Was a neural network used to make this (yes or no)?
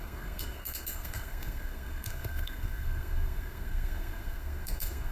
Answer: yes